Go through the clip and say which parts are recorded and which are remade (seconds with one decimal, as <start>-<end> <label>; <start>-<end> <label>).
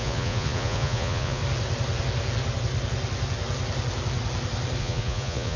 0.0-1.4 remade; 1.4-4.8 recorded; 4.8-5.6 remade